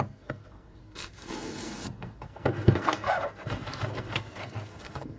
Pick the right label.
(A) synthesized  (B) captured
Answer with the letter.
A